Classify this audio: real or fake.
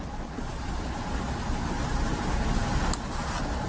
real